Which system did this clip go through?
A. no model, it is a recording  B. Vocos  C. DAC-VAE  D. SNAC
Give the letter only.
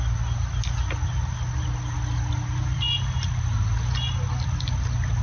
A